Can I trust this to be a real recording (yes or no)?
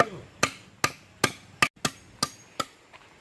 yes